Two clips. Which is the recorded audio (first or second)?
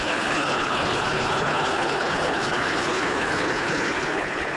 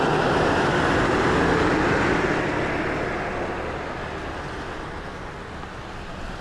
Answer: second